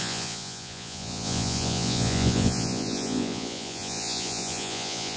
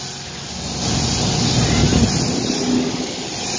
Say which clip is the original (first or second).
second